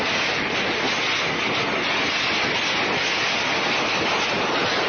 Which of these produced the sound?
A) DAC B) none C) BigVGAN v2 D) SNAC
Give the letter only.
B